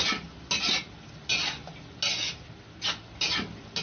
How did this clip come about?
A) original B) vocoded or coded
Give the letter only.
A